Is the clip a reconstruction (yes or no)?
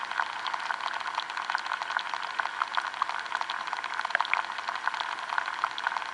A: no